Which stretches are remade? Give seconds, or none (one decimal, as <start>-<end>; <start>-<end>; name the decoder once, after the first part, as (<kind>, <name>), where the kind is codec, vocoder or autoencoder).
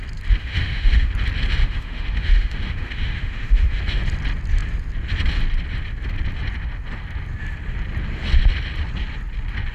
0.4-1.1 (autoencoder, DAC-VAE); 1.6-3.8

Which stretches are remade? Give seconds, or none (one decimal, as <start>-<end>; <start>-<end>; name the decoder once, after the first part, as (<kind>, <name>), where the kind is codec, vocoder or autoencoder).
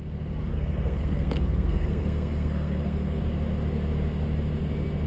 0.5-3.2 (codec, SNAC)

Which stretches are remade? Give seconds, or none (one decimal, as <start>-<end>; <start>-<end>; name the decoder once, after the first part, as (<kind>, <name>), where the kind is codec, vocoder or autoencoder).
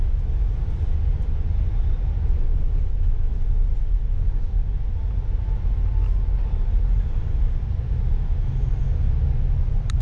none